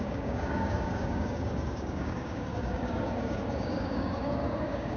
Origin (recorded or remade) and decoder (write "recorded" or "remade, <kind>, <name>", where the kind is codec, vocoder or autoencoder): remade, codec, DAC